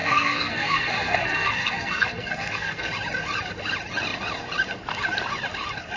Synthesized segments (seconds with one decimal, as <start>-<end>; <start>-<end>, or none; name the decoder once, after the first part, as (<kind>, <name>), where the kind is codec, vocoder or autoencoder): 0.0-2.9 (codec, SNAC)